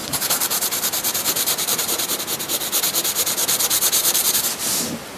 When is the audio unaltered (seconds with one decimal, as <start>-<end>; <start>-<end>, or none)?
2.2-4.0; 4.6-5.2